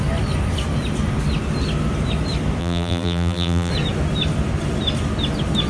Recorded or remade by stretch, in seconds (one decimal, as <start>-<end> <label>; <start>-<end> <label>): 0.0-2.6 recorded; 2.6-3.7 remade; 3.7-5.7 recorded